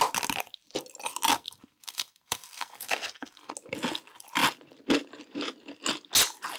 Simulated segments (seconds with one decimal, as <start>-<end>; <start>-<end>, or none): 1.3-3.5